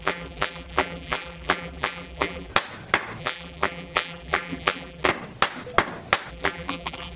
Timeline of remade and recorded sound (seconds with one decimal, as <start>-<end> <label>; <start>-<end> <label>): 0.0-2.5 remade; 2.5-3.2 recorded; 3.2-5.1 remade; 5.1-6.3 recorded; 6.3-7.2 remade